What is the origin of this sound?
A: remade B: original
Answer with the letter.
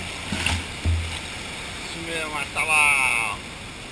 B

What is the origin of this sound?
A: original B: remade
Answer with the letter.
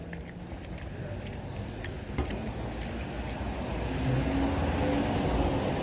A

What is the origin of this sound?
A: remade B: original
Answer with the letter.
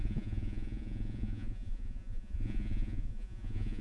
A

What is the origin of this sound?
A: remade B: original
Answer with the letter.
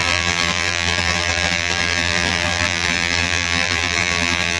A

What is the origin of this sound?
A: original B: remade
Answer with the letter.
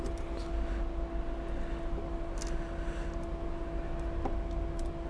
A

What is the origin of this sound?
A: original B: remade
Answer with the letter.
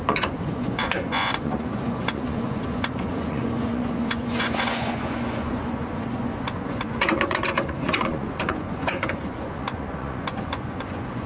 B